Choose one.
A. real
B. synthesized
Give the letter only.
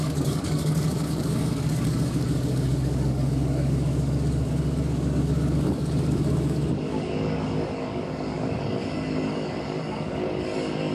B